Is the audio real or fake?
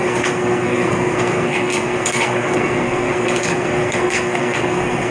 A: fake